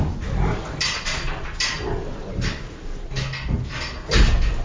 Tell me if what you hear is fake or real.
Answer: real